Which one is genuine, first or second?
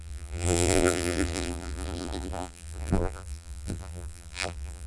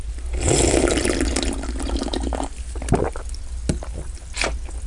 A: second